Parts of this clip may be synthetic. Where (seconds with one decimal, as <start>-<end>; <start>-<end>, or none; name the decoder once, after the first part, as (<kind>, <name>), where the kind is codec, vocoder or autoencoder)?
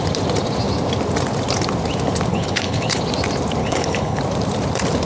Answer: 2.3-3.0 (codec, HILCodec); 3.6-4.2